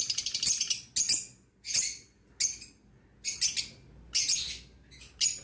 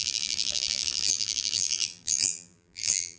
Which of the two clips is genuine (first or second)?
first